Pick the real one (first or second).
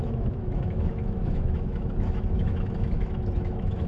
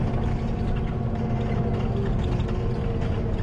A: second